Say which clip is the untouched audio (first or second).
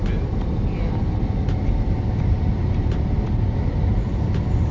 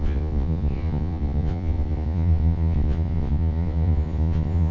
first